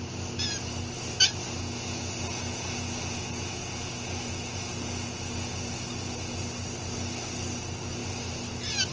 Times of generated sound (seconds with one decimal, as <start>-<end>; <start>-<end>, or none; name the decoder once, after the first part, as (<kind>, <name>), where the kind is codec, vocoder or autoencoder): 1.6-6.4 (vocoder, Vocos)